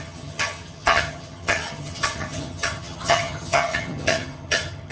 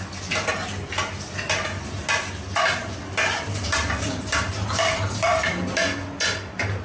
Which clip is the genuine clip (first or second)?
second